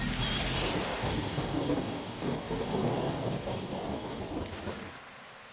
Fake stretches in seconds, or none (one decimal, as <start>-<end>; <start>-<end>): 0.9-4.2